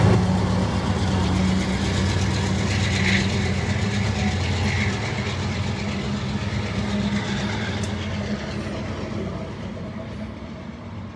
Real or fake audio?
real